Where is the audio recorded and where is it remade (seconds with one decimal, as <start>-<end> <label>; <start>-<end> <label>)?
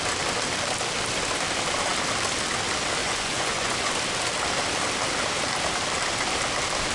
0.0-3.0 recorded; 3.0-3.9 remade; 3.9-6.9 recorded